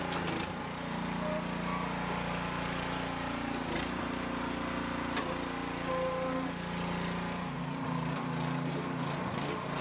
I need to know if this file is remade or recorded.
recorded